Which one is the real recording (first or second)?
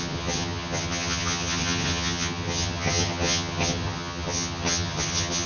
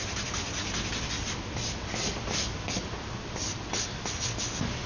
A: second